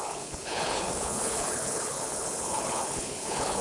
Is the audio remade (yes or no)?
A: yes